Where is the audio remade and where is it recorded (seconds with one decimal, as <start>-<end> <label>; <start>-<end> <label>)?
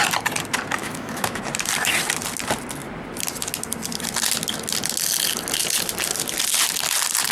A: 0.0-0.8 recorded; 0.8-1.4 remade; 1.4-7.3 recorded